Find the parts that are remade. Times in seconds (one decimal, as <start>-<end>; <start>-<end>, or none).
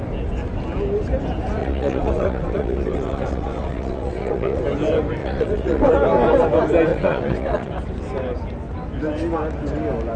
1.6-4.6; 5.2-5.9; 6.9-7.7